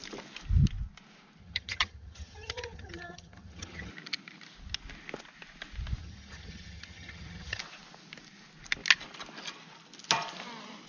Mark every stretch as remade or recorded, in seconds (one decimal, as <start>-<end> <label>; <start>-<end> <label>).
0.0-1.4 recorded; 1.4-3.9 remade; 3.9-6.0 recorded; 6.0-7.6 remade; 7.6-10.9 recorded

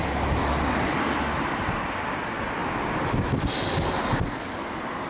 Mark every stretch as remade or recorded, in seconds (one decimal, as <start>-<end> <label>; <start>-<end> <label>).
0.0-2.6 recorded; 2.6-3.4 remade; 3.4-5.1 recorded

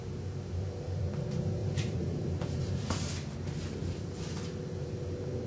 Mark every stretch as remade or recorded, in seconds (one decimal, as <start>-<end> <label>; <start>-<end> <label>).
0.0-1.0 remade; 1.0-1.6 recorded; 1.6-3.1 remade; 3.1-5.5 recorded

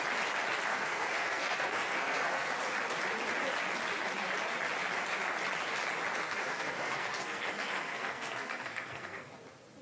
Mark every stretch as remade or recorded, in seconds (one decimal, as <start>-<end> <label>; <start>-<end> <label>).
0.0-0.7 recorded; 0.7-2.5 remade; 2.5-6.1 recorded; 6.1-9.3 remade; 9.3-9.8 recorded